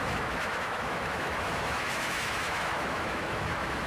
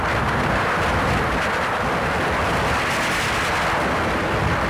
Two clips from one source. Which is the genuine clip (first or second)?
second